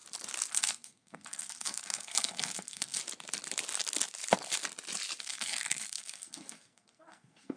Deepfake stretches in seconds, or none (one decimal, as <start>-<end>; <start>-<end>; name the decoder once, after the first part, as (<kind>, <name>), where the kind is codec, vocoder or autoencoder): 0.5-3.0 (codec, SNAC); 5.2-7.6